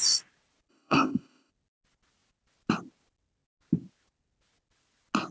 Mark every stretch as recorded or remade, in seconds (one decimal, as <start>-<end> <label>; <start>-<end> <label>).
0.0-0.7 recorded; 0.7-1.5 remade; 1.5-5.3 recorded